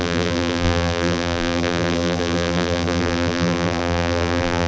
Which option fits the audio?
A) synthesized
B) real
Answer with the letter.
A